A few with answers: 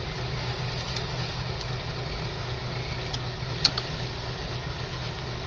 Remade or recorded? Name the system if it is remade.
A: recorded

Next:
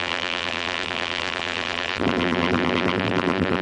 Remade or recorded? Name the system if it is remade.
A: remade, vocoder, BigVGAN v2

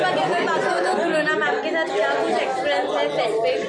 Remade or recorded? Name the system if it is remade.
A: recorded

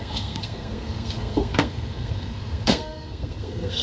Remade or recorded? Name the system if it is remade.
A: remade, codec, SNAC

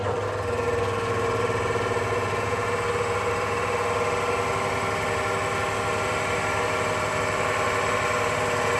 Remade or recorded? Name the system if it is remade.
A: recorded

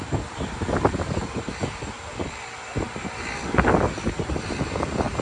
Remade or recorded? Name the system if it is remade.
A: recorded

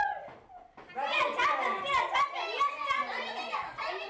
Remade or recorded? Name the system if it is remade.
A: recorded